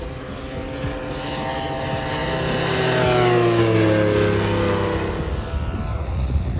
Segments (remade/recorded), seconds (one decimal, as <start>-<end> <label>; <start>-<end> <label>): 0.0-5.9 recorded; 5.9-6.6 remade

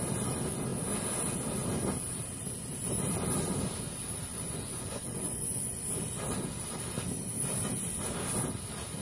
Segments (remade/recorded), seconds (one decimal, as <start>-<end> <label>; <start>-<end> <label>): 0.0-4.3 recorded; 4.3-5.8 remade; 5.8-9.0 recorded

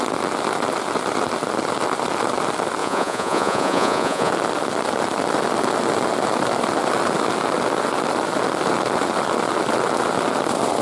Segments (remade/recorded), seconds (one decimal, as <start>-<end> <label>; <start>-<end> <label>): 0.0-2.8 recorded; 2.8-4.3 remade; 4.3-10.8 recorded